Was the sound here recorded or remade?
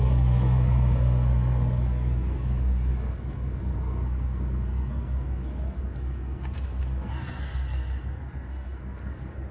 remade